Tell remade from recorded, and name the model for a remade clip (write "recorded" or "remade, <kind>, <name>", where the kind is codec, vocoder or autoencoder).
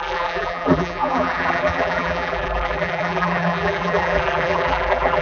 remade, vocoder, BigVGAN v2